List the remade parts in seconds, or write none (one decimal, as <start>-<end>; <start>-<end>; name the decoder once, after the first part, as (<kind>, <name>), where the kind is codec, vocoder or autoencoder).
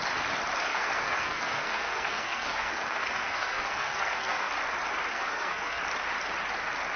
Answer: 0.7-4.5 (codec, SNAC); 5.1-5.8